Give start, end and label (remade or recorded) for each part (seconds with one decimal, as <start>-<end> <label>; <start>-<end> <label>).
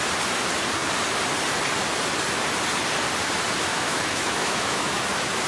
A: 0.0-3.7 recorded; 3.7-5.0 remade; 5.0-5.5 recorded